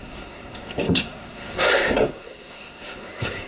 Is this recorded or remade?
remade